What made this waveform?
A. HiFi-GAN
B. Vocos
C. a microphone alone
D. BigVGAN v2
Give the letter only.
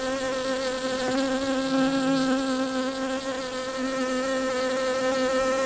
C